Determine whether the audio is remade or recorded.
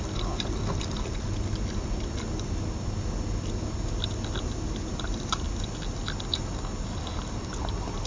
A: recorded